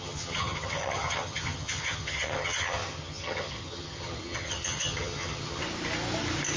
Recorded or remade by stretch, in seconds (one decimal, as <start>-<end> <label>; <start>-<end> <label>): 0.0-5.6 remade; 5.6-6.6 recorded